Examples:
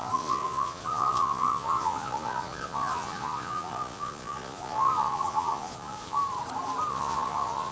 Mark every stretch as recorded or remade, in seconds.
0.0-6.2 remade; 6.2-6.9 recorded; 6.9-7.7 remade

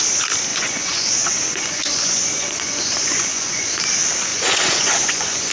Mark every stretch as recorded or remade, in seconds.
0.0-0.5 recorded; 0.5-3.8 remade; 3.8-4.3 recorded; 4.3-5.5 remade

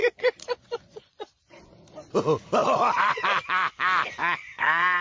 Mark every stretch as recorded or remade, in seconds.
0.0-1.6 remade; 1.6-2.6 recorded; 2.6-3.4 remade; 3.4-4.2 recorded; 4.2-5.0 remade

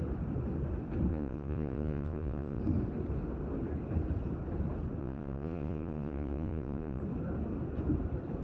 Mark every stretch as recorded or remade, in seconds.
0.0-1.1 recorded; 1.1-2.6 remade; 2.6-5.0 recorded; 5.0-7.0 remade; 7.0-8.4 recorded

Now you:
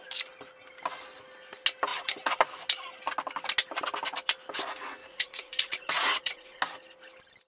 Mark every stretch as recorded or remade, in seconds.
0.0-5.0 recorded; 5.0-6.6 remade; 6.6-7.5 recorded

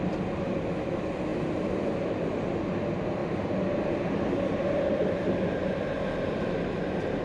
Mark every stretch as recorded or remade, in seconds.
0.0-7.2 recorded

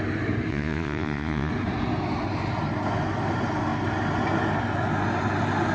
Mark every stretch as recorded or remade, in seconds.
0.0-0.5 recorded; 0.5-1.5 remade; 1.5-5.7 recorded